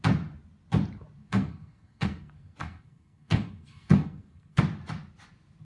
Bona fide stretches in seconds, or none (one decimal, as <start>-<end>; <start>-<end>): 0.0-1.2; 4.6-5.6

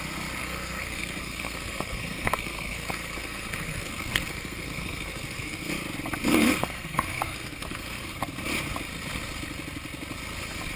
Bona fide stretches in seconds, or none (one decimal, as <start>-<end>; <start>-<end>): 0.0-0.4; 5.7-6.3; 8.2-10.8